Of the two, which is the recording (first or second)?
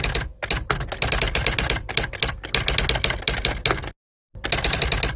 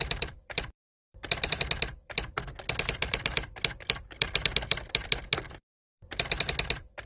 first